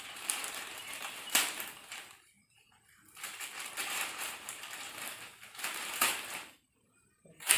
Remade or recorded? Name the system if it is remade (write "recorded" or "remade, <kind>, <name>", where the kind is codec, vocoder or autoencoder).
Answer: remade, vocoder, BigVGAN v2